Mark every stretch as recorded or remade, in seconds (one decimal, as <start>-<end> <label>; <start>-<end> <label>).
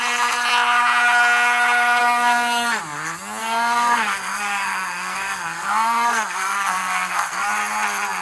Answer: 0.0-2.0 recorded; 2.0-2.8 remade; 2.8-3.4 recorded; 3.4-7.5 remade; 7.5-8.2 recorded